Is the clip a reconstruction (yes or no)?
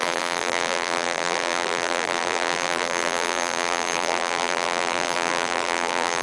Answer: yes